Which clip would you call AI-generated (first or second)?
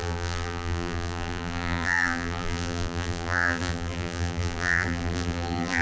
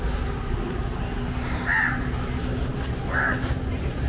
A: first